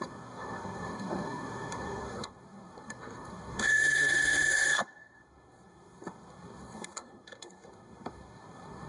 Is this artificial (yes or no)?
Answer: yes